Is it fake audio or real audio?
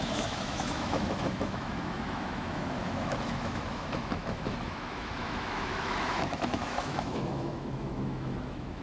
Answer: fake